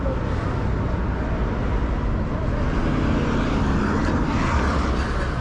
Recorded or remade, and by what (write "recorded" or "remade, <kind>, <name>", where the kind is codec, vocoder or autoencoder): recorded